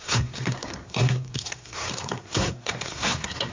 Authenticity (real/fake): fake